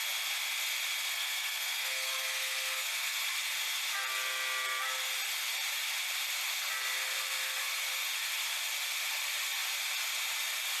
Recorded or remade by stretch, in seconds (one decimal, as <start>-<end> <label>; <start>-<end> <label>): 0.0-1.1 recorded; 1.1-3.2 remade; 3.2-10.8 recorded